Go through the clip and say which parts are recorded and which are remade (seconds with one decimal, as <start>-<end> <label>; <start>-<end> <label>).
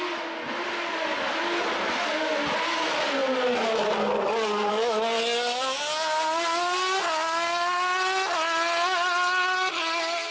0.0-10.3 recorded